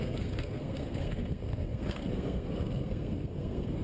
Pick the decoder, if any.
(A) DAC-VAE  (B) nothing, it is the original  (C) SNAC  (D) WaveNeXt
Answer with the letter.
C